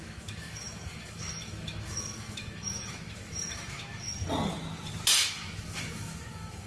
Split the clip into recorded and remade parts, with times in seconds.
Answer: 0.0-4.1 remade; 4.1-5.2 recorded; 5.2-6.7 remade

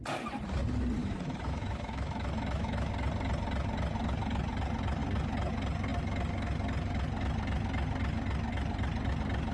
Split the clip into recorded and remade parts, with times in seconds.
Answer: 0.0-1.0 recorded; 1.0-2.9 remade; 2.9-9.5 recorded